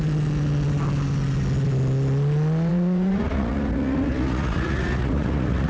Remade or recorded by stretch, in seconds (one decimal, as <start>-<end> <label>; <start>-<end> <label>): 0.0-2.7 recorded; 2.7-5.7 remade